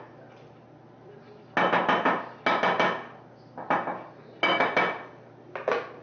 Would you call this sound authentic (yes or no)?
yes